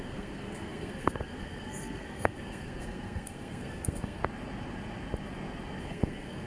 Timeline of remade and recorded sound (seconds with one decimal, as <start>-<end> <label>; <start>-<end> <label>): 0.0-4.2 remade; 4.2-5.8 recorded; 5.8-6.5 remade